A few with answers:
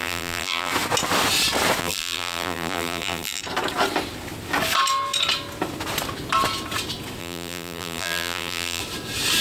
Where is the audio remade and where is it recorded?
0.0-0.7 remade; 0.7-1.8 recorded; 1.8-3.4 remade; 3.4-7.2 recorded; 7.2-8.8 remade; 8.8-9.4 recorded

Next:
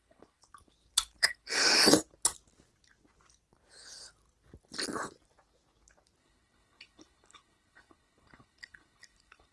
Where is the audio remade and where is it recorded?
0.0-0.4 remade; 0.4-1.2 recorded; 1.2-1.6 remade; 1.6-6.2 recorded; 6.2-9.5 remade

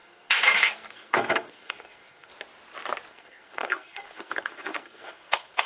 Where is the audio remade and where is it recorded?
0.0-2.3 remade; 2.3-3.1 recorded; 3.1-5.7 remade

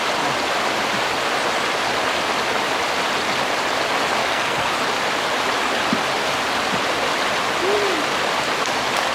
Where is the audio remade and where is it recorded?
0.0-4.2 recorded; 4.2-4.7 remade; 4.7-9.1 recorded

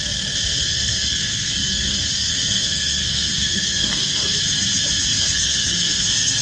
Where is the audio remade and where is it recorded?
0.0-0.7 recorded; 0.7-4.4 remade; 4.4-5.1 recorded; 5.1-6.4 remade